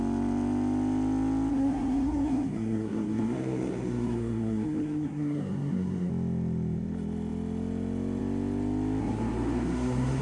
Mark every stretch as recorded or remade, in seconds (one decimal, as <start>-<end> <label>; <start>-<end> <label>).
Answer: 0.0-1.5 recorded; 1.5-6.1 remade; 6.1-9.0 recorded; 9.0-10.2 remade